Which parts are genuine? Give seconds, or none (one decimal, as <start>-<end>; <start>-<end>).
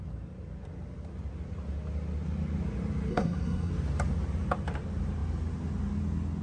0.0-3.1; 3.7-6.4